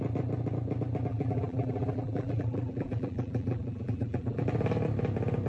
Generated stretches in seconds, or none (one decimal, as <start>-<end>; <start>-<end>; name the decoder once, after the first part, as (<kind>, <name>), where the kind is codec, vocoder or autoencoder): 1.1-4.4 (vocoder, BigVGAN v2)